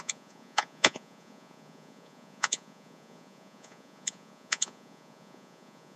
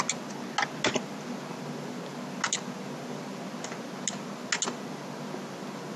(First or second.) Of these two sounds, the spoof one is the first